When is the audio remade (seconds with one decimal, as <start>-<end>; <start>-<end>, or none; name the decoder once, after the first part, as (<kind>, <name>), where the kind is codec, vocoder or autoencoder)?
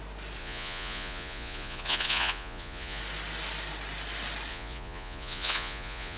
0.4-3.0 (vocoder, Vocos); 4.5-6.2